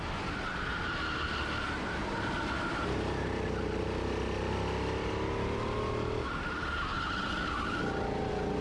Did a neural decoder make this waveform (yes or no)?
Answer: no